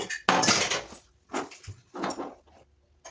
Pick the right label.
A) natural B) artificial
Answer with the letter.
A